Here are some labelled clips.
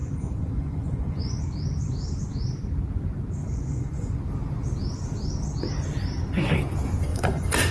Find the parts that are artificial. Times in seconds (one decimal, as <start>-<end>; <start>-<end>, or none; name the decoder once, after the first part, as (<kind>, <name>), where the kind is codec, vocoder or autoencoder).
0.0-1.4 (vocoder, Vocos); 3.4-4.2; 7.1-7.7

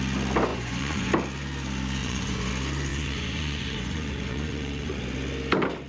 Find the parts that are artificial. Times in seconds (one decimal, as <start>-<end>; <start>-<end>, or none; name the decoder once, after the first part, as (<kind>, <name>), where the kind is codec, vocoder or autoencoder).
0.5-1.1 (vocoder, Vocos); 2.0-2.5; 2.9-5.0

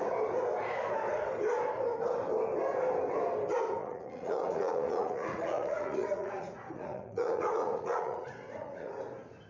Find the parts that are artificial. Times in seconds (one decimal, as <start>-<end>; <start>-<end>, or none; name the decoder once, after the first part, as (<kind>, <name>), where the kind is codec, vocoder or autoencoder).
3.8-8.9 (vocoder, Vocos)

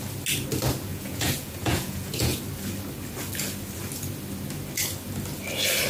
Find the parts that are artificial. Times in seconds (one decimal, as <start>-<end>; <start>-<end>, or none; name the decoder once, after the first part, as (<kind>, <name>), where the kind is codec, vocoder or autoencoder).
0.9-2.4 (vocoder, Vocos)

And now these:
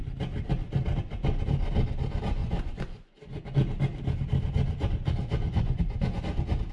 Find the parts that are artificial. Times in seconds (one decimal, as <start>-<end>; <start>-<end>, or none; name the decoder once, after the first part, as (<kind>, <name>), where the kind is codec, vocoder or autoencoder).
2.4-3.4 (vocoder, Vocos); 5.2-6.2

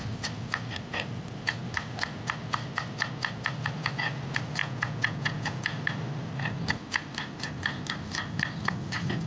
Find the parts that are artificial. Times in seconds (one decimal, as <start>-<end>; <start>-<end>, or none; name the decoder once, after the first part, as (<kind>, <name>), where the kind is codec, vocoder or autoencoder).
4.6-5.6 (vocoder, Vocos)

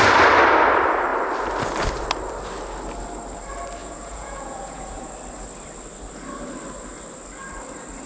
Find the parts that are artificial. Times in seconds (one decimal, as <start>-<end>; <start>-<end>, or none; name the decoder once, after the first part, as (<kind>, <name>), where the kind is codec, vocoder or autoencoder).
3.8-5.1 (vocoder, Vocos)

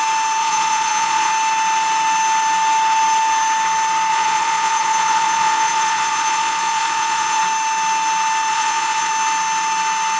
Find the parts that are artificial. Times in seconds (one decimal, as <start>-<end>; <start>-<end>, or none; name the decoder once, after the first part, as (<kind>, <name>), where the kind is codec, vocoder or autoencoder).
0.4-1.3 (vocoder, Vocos); 4.1-7.4; 8.5-9.1